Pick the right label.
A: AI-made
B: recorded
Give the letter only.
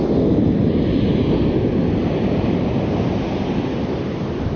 B